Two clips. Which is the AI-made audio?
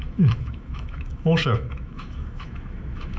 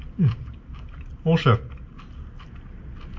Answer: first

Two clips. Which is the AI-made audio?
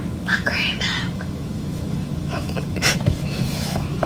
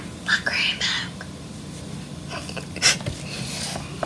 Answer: first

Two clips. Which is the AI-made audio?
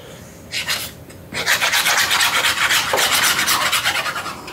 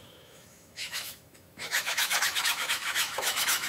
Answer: second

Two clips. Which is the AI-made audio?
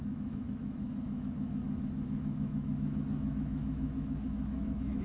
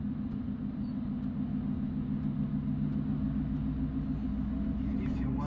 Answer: first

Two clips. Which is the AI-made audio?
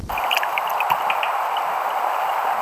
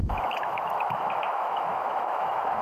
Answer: second